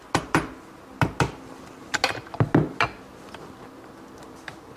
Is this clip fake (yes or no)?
no